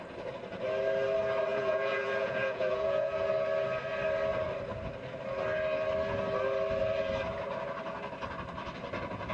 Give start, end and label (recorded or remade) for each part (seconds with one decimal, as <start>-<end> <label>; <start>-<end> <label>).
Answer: 0.0-1.5 recorded; 1.5-3.3 remade; 3.3-9.3 recorded